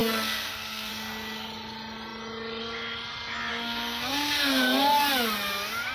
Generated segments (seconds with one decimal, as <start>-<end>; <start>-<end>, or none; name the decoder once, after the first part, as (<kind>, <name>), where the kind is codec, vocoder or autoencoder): 0.0-0.9 (codec, SNAC); 3.5-4.6

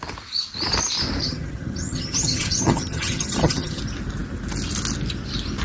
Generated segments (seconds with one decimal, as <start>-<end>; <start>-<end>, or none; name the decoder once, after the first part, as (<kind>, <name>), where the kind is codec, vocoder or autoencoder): 1.2-3.8 (vocoder, HiFi-GAN)

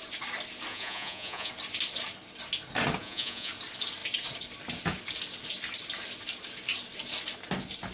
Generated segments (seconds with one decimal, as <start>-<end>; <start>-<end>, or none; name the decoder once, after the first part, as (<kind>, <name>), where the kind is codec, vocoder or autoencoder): 0.7-1.5 (vocoder, Vocos); 3.0-3.5

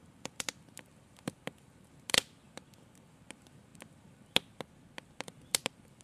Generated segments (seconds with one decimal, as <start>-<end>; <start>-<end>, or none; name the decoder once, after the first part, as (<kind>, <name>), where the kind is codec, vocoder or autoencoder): none

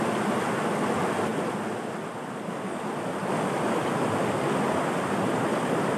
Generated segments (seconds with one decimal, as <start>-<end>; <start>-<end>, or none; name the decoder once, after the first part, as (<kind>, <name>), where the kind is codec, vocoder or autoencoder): none

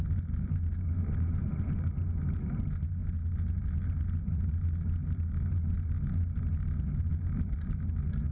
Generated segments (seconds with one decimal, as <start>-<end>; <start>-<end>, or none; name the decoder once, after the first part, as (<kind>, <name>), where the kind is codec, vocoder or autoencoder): 1.1-1.9 (vocoder, Vocos)

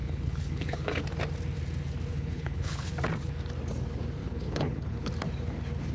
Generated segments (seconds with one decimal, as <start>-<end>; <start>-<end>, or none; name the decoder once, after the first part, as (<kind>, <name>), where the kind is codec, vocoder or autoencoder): 0.0-1.0 (codec, HILCodec); 2.1-2.9; 4.2-5.1